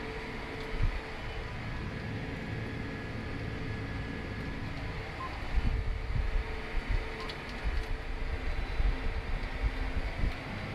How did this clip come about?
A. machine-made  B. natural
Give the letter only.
B